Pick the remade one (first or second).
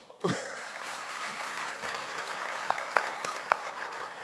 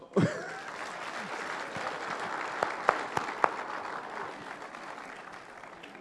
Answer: first